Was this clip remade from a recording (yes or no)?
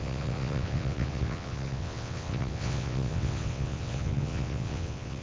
yes